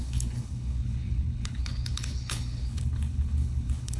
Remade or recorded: remade